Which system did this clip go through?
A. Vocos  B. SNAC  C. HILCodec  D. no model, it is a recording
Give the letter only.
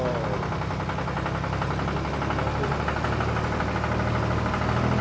D